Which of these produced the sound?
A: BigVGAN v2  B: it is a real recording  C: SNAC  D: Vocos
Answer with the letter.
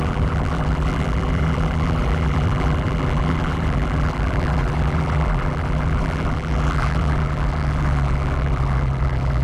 A